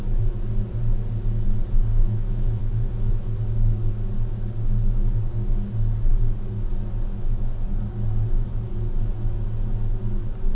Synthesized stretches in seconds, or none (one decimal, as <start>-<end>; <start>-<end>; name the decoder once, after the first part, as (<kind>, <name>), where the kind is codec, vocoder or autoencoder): 1.9-3.1 (autoencoder, DAC-VAE)